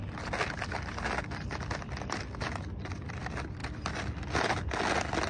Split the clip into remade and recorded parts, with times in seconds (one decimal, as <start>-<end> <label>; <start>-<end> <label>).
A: 0.0-5.3 recorded